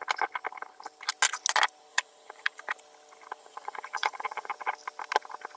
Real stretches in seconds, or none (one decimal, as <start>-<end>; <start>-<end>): 0.0-1.9; 2.6-3.4; 4.5-5.6